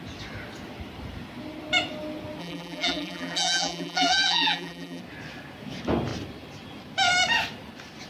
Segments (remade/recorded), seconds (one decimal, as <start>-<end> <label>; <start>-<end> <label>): 0.0-2.4 recorded; 2.4-5.0 remade; 5.0-8.1 recorded